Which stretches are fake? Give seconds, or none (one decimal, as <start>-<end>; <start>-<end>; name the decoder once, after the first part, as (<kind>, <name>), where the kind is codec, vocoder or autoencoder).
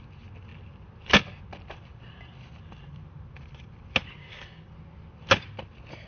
4.2-4.7 (codec, DAC)